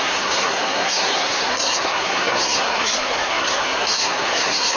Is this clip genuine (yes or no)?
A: no